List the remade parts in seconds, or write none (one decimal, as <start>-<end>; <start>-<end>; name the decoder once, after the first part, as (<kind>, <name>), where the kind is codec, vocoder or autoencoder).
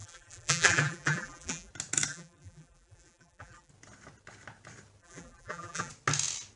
0.0-1.7 (vocoder, BigVGAN v2); 2.1-3.7; 5.0-5.9